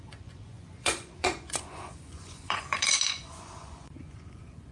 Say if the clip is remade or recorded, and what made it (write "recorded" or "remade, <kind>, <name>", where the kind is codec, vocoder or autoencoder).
remade, vocoder, Vocos